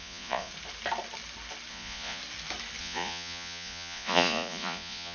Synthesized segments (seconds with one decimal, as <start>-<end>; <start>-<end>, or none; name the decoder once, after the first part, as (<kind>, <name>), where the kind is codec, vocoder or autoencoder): 0.0-0.5 (vocoder, Vocos); 1.7-2.2; 2.8-5.1

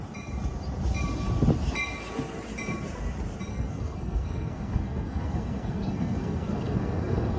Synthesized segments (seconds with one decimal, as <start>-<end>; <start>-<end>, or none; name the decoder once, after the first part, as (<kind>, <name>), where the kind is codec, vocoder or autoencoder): 3.5-7.4 (codec, SNAC)

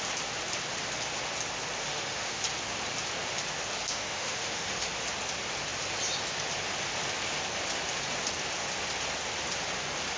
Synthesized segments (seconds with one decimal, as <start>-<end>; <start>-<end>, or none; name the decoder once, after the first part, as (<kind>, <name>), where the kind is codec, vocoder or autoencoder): 1.8-2.4 (autoencoder, DAC-VAE); 3.9-5.0

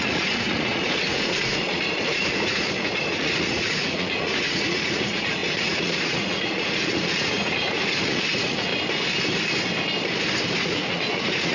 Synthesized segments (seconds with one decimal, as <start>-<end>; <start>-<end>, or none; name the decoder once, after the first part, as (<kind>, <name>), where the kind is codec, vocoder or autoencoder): 0.0-8.7 (vocoder, Vocos); 10.6-11.5

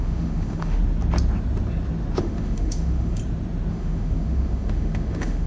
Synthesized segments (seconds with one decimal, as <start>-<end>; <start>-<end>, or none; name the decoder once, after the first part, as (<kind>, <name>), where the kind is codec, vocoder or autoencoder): 0.0-0.8 (autoencoder, DAC-VAE); 2.2-3.2; 3.7-5.5

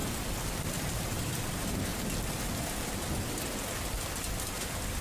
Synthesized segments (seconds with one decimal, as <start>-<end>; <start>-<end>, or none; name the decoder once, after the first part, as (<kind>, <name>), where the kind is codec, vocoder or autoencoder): none